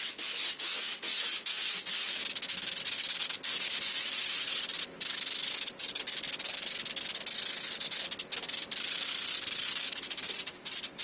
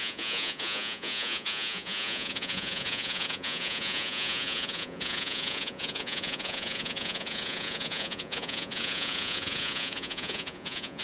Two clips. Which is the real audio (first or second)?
first